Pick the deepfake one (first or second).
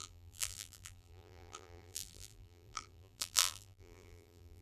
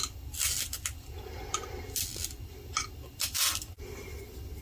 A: first